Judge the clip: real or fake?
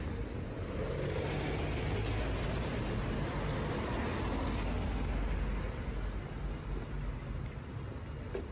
real